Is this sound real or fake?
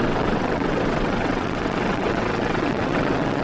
fake